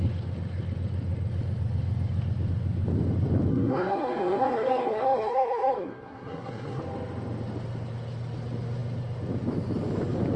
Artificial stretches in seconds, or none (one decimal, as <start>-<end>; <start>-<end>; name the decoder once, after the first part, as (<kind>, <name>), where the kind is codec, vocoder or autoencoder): 3.5-6.8 (codec, SNAC)